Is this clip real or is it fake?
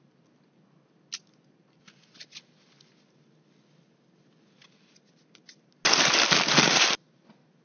real